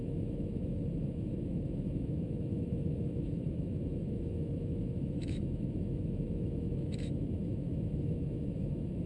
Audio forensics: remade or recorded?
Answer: remade